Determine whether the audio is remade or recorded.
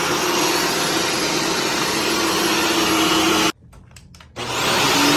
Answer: recorded